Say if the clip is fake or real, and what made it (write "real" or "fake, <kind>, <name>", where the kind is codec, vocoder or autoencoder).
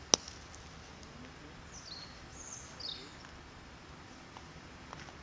real